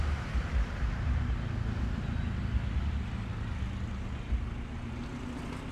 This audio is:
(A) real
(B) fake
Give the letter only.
A